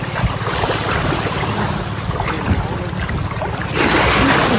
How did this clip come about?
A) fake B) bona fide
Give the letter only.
B